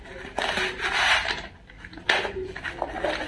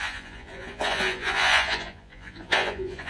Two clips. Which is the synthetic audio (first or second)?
second